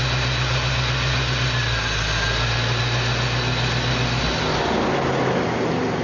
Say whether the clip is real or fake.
real